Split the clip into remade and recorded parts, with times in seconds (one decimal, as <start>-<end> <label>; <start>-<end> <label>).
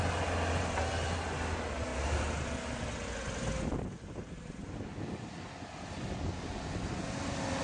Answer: 0.0-7.6 recorded